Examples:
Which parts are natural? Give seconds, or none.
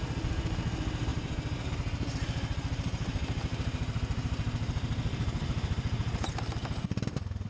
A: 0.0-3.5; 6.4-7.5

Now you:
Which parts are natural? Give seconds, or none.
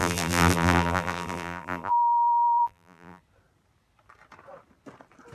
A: 3.2-5.3